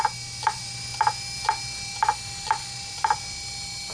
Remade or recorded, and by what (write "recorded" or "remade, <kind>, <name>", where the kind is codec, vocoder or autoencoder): recorded